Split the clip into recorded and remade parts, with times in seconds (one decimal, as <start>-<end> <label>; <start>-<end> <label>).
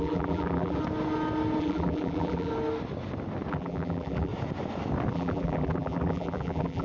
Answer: 0.0-0.8 remade; 0.8-1.6 recorded; 1.6-2.5 remade; 2.5-3.5 recorded; 3.5-4.3 remade; 4.3-5.1 recorded; 5.1-6.8 remade